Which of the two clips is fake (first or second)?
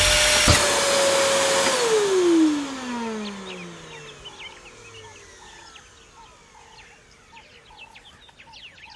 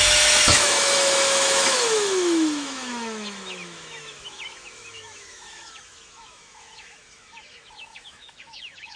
second